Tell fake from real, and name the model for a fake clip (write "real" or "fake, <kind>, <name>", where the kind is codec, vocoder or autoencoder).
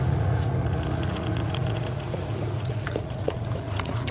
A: fake, vocoder, Vocos